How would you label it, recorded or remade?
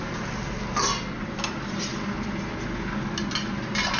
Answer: recorded